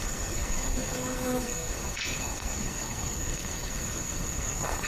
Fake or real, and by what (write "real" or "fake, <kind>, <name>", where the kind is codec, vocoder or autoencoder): fake, codec, SNAC